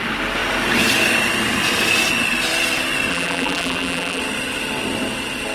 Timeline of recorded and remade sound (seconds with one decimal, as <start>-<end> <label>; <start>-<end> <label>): 0.0-3.1 recorded; 3.1-4.2 remade; 4.2-5.5 recorded